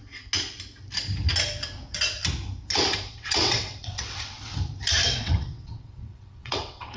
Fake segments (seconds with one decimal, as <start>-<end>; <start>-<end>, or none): 3.1-4.5; 5.2-7.0